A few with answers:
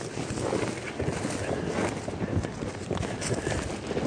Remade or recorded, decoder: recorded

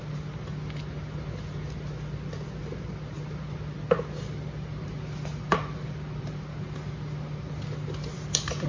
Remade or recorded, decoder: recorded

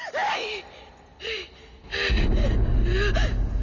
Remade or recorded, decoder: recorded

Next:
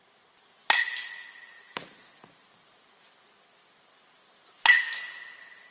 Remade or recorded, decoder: recorded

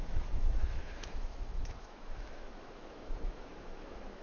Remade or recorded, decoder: remade, autoencoder, DAC-VAE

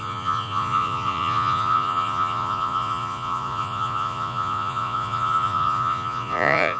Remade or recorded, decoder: remade, vocoder, Vocos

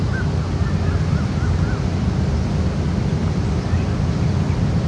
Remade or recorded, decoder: recorded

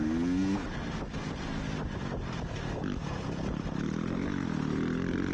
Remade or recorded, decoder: recorded